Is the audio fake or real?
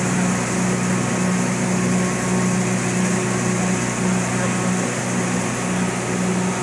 real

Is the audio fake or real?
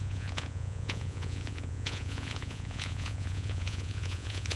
fake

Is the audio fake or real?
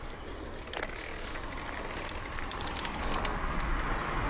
real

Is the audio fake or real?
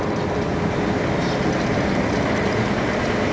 real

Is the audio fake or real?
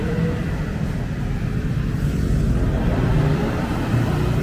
fake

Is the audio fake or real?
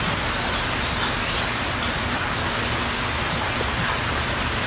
real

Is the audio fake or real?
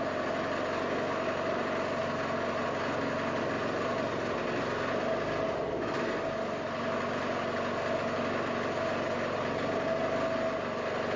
real